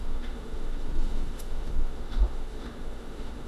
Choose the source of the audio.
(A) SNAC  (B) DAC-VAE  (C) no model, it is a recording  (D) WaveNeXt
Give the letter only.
B